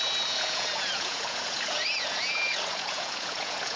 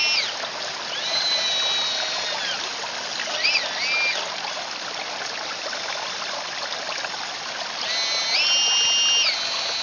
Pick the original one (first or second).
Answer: second